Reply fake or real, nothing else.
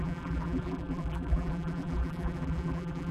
fake